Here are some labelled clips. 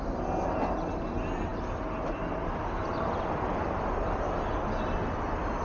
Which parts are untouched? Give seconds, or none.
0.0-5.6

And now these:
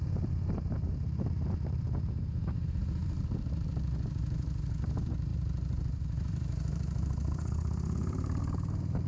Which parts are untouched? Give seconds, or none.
none

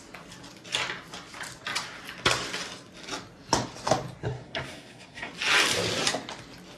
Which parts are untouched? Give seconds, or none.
0.0-4.2; 5.3-6.8

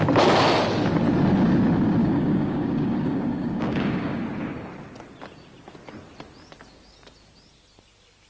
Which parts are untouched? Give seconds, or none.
0.0-2.0; 4.2-8.3

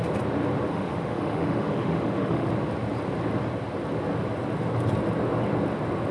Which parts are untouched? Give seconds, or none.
0.0-0.7; 2.5-6.1

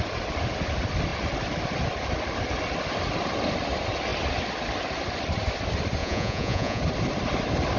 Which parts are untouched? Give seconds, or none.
0.0-6.0; 6.8-7.8